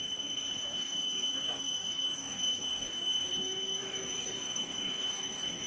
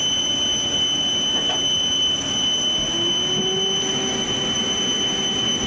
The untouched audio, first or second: second